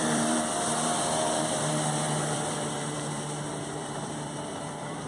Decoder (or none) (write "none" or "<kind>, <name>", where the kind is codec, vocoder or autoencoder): vocoder, BigVGAN v2